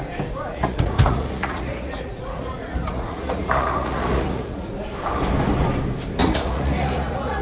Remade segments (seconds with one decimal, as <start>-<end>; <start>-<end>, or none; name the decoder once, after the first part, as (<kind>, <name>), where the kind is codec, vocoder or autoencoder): 0.5-4.7 (vocoder, Vocos); 6.2-7.4